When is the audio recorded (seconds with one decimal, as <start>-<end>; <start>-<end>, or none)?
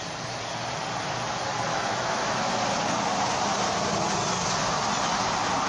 0.0-1.7; 2.5-5.7